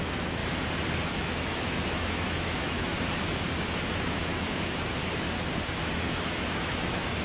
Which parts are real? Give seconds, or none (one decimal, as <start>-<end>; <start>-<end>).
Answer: 0.4-1.0; 2.9-3.9; 5.0-5.7